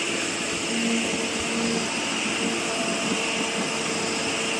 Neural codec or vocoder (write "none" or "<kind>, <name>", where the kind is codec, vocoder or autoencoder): none